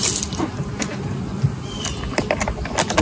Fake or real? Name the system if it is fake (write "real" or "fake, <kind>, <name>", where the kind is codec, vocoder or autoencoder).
real